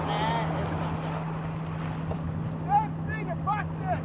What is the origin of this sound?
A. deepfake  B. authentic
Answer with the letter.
B